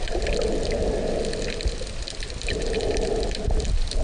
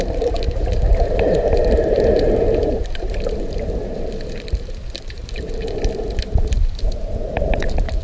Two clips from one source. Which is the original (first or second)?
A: first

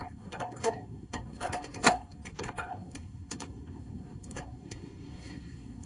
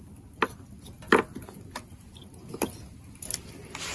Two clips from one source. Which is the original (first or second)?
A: second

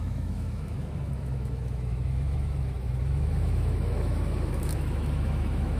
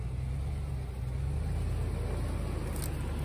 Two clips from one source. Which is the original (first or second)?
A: second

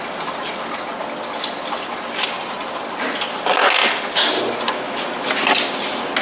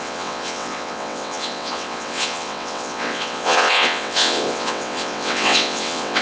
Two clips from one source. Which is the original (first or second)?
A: first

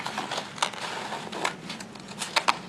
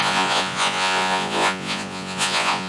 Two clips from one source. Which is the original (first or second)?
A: first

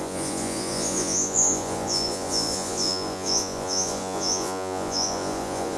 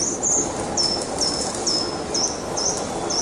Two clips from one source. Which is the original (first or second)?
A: second